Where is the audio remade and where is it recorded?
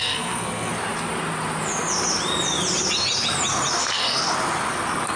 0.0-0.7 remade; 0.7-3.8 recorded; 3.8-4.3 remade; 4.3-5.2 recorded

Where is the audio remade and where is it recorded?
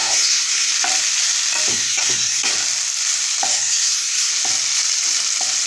0.0-0.7 remade; 0.7-1.7 recorded; 1.7-2.5 remade; 2.5-3.5 recorded; 3.5-4.3 remade; 4.3-5.7 recorded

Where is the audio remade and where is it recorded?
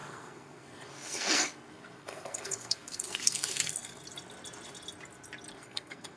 0.0-4.0 remade; 4.0-5.5 recorded; 5.5-6.2 remade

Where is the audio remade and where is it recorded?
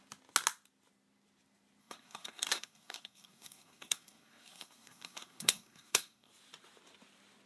0.0-1.8 recorded; 1.8-6.3 remade; 6.3-7.5 recorded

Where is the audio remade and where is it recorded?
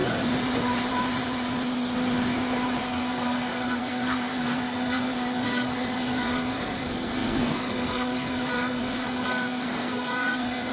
0.0-2.8 recorded; 2.8-10.7 remade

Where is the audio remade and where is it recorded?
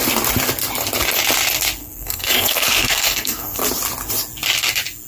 0.0-1.8 recorded; 1.8-3.6 remade; 3.6-5.1 recorded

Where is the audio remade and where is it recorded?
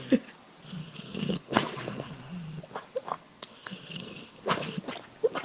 0.0-0.8 recorded; 0.8-2.1 remade; 2.1-3.1 recorded; 3.1-4.8 remade; 4.8-5.4 recorded